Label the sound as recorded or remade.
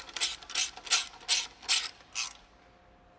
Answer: recorded